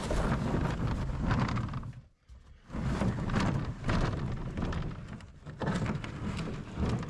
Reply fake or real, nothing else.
fake